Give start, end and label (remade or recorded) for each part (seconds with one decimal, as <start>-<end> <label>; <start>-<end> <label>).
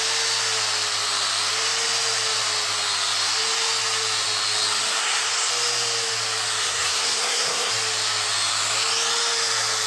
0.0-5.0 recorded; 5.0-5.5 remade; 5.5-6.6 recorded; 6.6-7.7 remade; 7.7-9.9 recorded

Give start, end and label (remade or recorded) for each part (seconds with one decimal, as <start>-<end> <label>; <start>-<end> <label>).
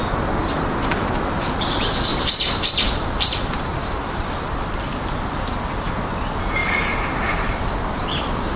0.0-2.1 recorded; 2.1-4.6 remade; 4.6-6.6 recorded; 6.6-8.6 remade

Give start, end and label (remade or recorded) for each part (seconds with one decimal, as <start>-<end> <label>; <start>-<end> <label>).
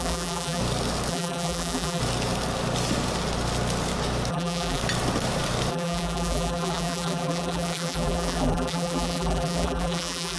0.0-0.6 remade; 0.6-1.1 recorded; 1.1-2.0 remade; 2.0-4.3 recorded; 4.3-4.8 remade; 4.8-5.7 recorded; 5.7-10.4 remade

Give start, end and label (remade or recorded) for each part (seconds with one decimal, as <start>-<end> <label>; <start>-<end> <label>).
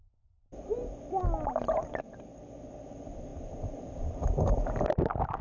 0.0-5.4 recorded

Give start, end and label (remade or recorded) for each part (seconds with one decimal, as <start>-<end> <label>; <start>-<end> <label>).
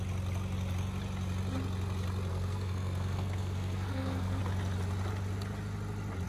0.0-2.3 recorded; 2.3-4.4 remade; 4.4-6.3 recorded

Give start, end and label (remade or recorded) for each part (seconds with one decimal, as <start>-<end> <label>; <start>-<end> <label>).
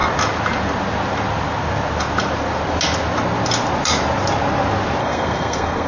0.0-5.0 recorded; 5.0-5.9 remade